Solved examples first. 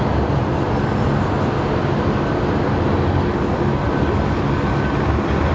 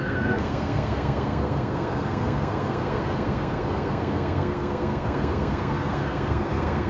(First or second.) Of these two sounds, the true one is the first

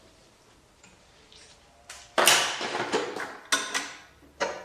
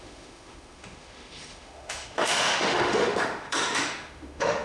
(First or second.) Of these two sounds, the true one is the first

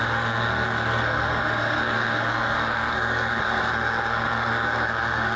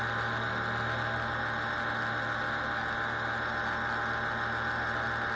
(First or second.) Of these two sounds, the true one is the second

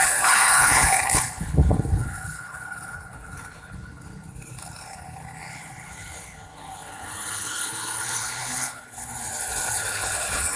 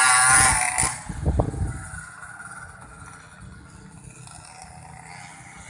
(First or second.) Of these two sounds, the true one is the second